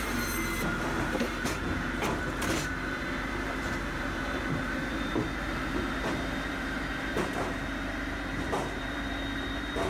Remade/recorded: remade